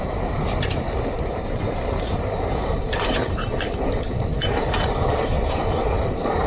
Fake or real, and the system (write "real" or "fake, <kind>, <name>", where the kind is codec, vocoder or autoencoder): fake, vocoder, BigVGAN v2